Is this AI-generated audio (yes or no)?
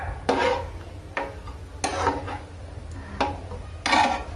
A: no